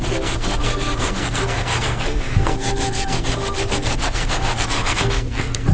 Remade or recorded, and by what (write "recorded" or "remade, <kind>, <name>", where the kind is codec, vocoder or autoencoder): remade, codec, SNAC